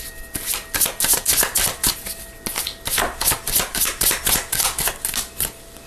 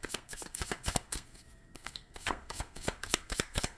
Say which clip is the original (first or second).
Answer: first